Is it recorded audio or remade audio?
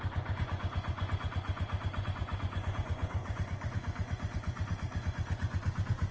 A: remade